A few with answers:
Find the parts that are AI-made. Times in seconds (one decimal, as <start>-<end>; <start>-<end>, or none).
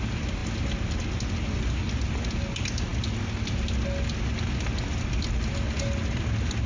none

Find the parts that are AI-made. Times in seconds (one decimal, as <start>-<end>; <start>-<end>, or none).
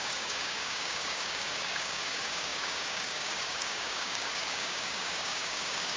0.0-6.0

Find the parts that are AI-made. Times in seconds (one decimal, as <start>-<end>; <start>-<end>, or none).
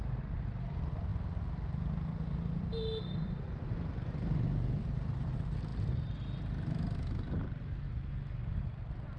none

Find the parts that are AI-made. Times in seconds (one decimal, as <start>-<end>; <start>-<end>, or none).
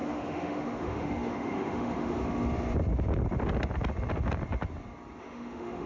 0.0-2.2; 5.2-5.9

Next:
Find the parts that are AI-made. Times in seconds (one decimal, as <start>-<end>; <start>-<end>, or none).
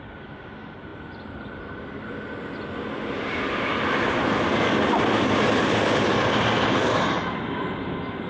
none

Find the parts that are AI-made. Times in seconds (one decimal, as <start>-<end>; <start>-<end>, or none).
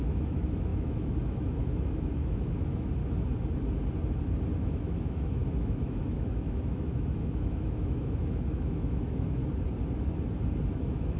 0.0-3.0; 4.6-9.4; 10.7-11.2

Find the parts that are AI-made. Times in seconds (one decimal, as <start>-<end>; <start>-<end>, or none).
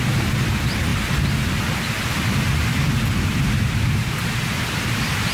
none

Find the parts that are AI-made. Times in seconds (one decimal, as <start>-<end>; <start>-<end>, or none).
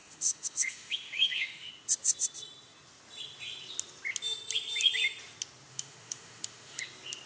0.0-1.7; 5.7-6.8